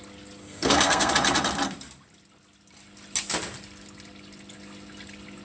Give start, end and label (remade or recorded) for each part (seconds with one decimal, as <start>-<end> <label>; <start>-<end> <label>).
0.0-0.4 recorded; 0.4-1.1 remade; 1.1-5.4 recorded